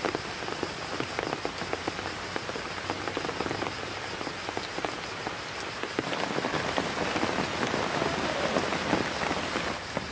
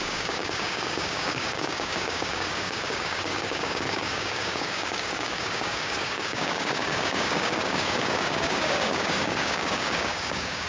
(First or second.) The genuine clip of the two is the first